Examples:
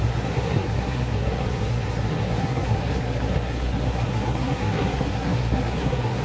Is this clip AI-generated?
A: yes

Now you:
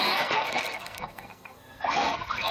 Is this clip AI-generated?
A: yes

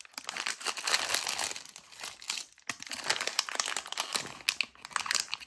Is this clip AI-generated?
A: no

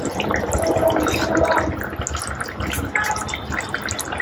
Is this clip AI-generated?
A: no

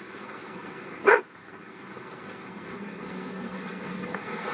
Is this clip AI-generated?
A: yes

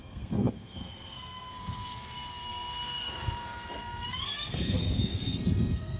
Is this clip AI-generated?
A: yes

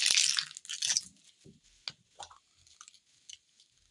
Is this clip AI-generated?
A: no